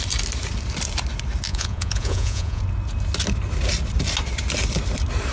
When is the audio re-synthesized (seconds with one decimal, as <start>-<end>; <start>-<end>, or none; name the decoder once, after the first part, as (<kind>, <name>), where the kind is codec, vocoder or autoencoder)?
1.5-2.6 (vocoder, Vocos)